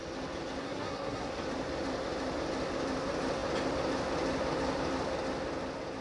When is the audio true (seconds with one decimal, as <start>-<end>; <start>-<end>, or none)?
0.0-0.6; 1.3-6.0